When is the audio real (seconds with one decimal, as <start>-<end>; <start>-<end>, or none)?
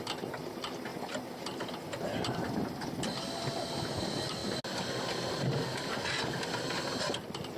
0.0-7.6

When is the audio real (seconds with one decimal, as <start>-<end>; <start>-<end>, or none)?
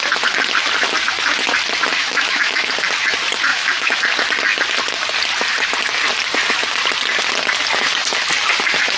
0.0-2.0; 2.7-3.5; 4.0-9.0